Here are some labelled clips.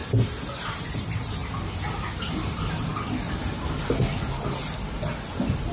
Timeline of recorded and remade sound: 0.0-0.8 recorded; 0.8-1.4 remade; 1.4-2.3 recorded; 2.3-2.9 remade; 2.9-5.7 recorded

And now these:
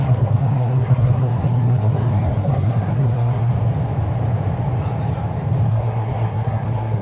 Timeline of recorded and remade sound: 0.0-3.5 remade; 3.5-5.7 recorded; 5.7-7.0 remade

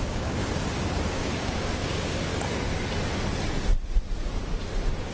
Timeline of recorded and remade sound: 0.0-0.4 remade; 0.4-1.1 recorded; 1.1-2.3 remade; 2.3-5.1 recorded